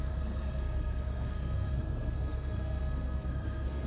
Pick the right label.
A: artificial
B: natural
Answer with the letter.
A